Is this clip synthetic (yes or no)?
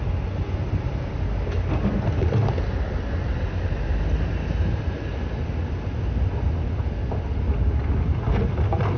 no